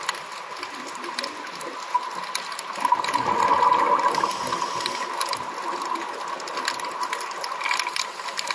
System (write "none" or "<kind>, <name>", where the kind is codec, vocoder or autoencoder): none